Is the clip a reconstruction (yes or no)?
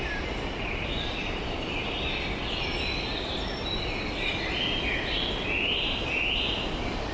no